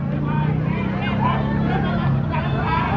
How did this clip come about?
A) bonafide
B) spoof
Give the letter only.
A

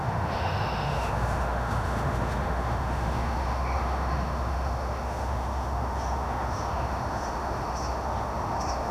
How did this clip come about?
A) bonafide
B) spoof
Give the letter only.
B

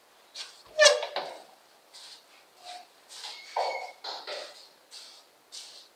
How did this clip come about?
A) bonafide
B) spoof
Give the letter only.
A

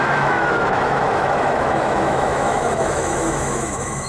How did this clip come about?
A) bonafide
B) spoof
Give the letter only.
B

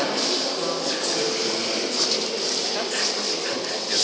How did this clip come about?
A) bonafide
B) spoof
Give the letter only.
A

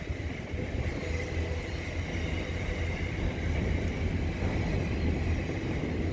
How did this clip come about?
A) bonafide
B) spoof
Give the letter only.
A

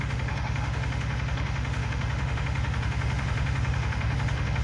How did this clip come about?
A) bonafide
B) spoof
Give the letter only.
B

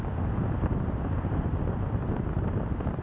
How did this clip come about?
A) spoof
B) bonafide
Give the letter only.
B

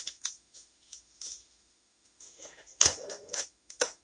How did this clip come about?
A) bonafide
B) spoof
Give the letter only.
B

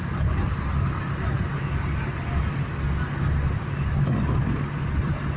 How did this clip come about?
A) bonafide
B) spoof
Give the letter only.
A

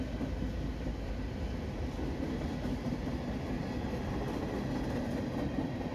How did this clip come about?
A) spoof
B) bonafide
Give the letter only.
B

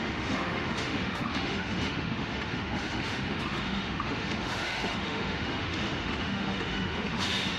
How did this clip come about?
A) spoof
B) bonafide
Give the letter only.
A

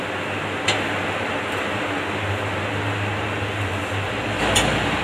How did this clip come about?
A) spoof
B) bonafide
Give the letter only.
B